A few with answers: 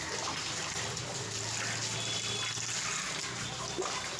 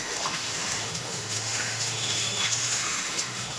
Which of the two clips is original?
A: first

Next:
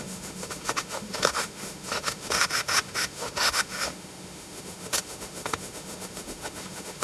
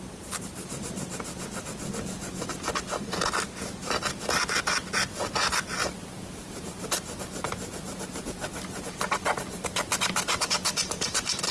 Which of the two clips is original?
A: second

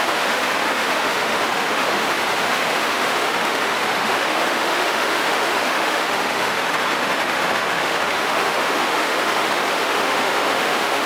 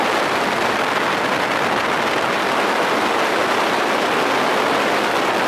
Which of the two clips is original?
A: second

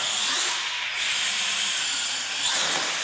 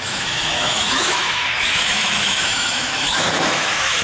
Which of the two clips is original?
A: first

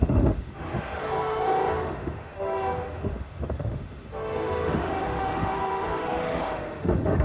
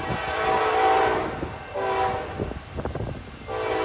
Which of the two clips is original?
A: second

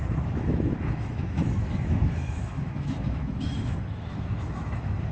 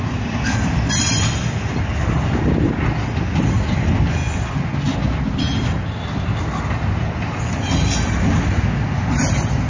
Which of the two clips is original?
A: second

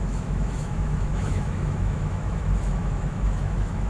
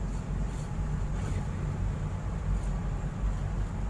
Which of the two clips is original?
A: second